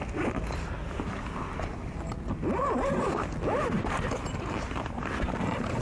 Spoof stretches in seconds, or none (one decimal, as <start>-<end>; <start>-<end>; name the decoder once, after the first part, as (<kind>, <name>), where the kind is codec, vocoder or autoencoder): none